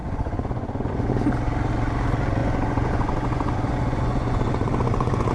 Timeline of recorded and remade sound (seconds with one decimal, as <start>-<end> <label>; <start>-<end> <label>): 0.0-1.1 remade; 1.1-2.4 recorded; 2.4-5.3 remade